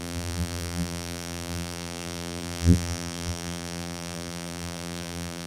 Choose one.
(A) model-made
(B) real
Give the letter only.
A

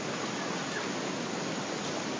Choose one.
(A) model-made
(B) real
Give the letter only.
B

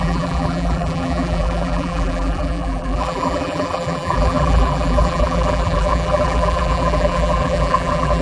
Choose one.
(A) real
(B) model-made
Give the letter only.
B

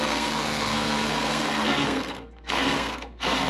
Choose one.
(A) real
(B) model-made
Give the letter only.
B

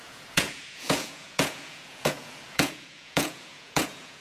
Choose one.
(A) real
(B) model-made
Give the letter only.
B